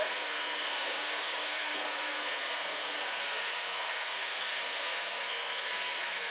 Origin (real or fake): fake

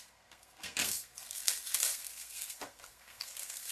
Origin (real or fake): fake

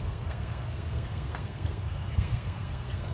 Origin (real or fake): fake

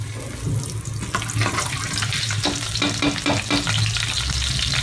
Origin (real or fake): real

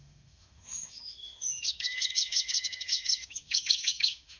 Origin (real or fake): fake